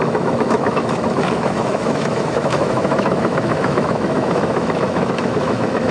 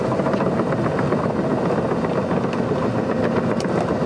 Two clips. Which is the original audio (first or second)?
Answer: second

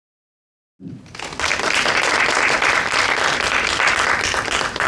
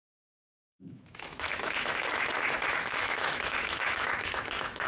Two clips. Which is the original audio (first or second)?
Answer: first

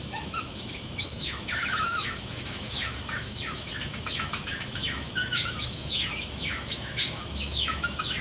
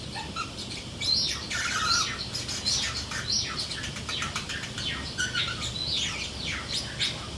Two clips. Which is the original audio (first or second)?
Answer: second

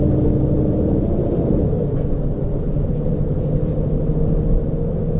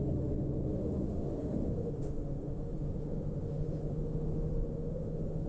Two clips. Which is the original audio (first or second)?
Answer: first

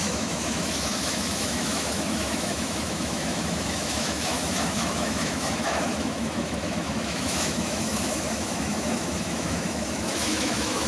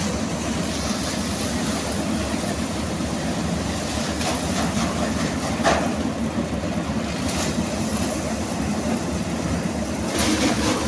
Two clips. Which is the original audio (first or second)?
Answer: second